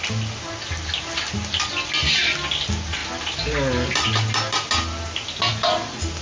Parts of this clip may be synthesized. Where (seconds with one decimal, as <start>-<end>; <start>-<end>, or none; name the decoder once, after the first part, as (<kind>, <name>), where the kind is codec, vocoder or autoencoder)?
none